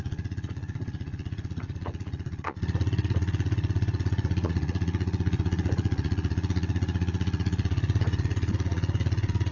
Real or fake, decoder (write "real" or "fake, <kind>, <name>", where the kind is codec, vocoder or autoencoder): fake, vocoder, Vocos